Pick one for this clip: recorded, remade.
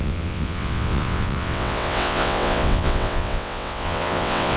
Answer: remade